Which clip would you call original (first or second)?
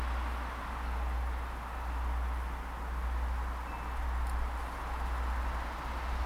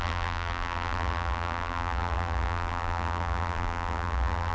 first